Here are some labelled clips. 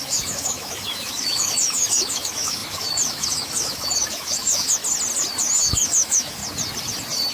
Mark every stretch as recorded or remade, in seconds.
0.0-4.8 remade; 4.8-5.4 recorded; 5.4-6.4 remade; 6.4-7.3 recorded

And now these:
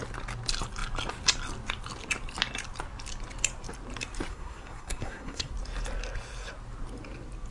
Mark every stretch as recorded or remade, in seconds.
0.0-4.3 recorded; 4.3-5.5 remade; 5.5-7.5 recorded

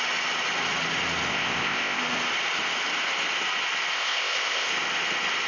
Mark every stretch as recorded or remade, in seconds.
0.0-1.3 recorded; 1.3-2.0 remade; 2.0-3.9 recorded; 3.9-4.7 remade; 4.7-5.5 recorded